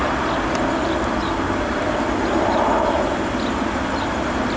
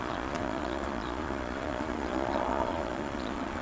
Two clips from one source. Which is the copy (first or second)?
second